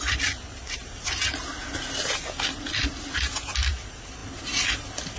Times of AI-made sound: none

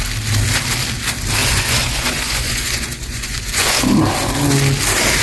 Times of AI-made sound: 1.4-3.9 (vocoder, Vocos)

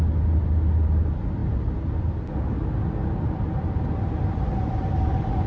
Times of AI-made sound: none

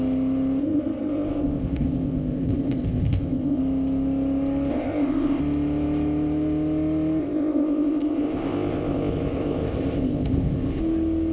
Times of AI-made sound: 0.6-3.6 (codec, ZipCodec); 4.7-5.4; 7.2-10.8

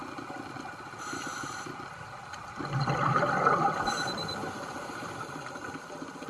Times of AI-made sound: 4.2-5.6 (vocoder, BigVGAN v2)

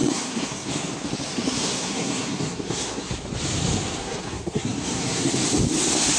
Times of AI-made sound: 0.0-0.7 (codec, SNAC); 1.3-3.1; 4.0-5.3